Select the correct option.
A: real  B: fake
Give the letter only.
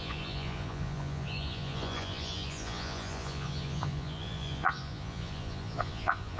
B